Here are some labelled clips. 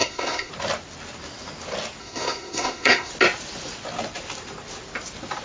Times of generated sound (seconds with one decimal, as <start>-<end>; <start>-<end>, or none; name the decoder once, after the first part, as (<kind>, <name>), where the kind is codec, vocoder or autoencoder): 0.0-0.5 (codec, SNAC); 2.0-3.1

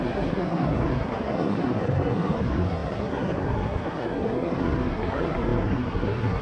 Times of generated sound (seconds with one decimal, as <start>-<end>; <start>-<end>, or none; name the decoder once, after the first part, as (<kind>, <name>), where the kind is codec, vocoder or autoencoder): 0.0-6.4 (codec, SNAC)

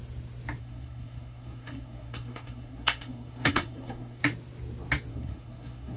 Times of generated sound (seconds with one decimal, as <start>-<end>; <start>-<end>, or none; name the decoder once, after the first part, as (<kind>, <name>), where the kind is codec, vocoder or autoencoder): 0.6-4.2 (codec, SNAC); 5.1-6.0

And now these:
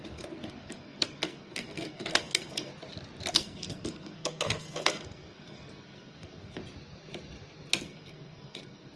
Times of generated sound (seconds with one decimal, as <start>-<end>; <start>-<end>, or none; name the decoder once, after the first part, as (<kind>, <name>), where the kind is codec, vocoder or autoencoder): 0.0-2.7 (codec, SNAC); 3.3-6.6; 7.8-9.0

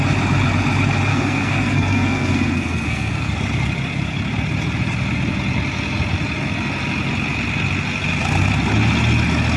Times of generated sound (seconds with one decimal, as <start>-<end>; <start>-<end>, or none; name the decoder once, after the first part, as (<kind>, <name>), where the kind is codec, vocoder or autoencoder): 1.1-3.3 (codec, SNAC)